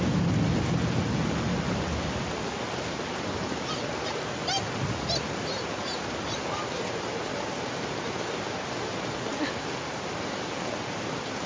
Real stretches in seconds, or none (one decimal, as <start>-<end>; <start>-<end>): 0.0-11.5